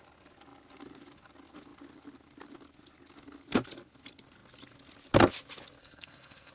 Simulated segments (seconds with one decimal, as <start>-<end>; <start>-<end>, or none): 5.8-6.5